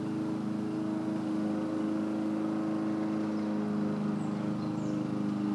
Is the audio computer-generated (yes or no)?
no